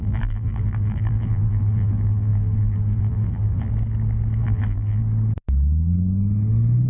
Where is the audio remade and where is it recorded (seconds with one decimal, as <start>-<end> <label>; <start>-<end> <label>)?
0.0-3.7 remade; 3.7-4.4 recorded; 4.4-5.0 remade; 5.0-6.9 recorded